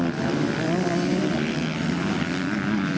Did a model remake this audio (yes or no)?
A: no